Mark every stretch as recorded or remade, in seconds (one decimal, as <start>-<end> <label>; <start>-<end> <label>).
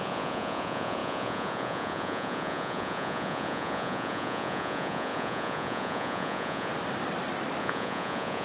0.0-6.7 remade; 6.7-7.6 recorded; 7.6-8.4 remade